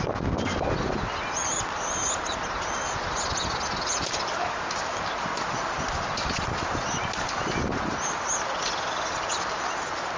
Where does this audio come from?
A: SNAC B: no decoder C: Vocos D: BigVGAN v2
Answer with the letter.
B